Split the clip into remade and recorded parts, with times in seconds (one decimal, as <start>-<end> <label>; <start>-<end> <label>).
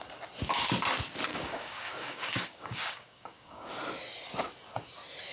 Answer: 0.0-1.3 recorded; 1.3-3.7 remade; 3.7-5.3 recorded